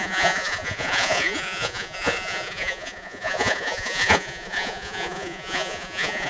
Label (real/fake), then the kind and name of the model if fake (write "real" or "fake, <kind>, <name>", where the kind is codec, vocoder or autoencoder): fake, vocoder, Vocos